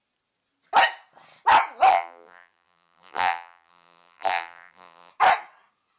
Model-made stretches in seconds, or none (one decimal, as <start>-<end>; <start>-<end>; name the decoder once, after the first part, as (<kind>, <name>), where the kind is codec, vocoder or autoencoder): 1.9-5.1 (vocoder, BigVGAN v2)